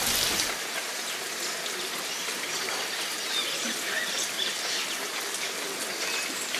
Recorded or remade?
recorded